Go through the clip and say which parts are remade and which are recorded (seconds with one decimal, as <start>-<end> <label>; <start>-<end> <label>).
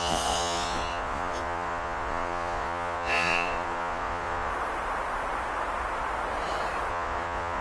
0.0-4.5 remade; 4.5-6.9 recorded; 6.9-7.6 remade